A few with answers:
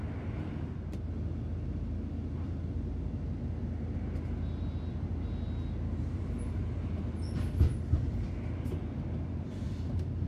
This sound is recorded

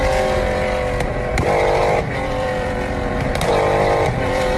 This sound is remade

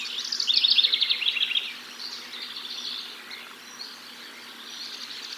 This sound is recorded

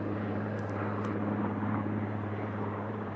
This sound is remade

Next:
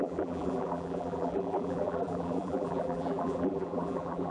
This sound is remade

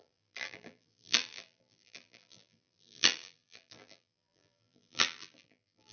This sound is remade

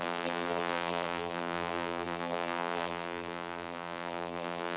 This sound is remade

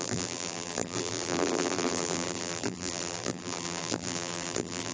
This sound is remade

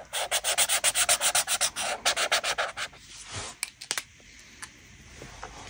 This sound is recorded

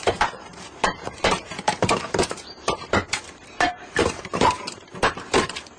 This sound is remade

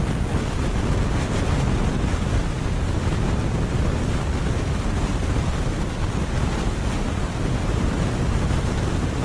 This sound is recorded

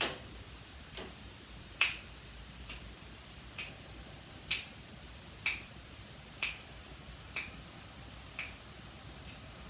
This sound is remade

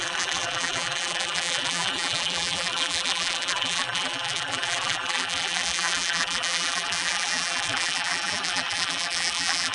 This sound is remade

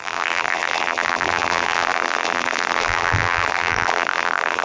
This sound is remade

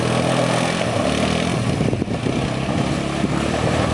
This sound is remade